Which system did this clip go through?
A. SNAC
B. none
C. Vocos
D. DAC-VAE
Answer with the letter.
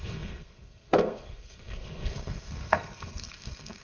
A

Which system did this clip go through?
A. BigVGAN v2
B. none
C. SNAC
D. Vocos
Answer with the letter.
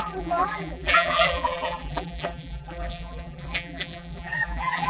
A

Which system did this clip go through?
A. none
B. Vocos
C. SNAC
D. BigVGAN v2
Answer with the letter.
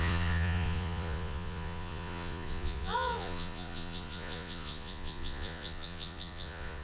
B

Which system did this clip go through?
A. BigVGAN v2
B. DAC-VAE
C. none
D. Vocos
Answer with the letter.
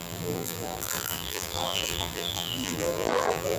A